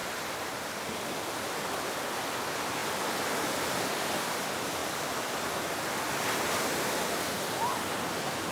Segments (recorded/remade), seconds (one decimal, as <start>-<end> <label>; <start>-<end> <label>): 0.0-8.5 recorded